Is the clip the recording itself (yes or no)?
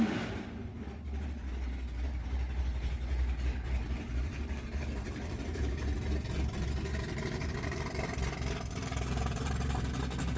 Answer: no